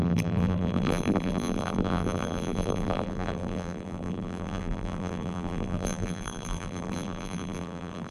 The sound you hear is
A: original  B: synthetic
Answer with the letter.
B